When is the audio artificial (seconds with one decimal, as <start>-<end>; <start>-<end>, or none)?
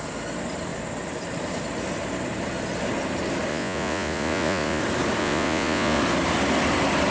3.5-4.8; 5.2-6.0